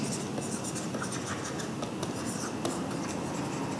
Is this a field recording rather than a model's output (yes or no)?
yes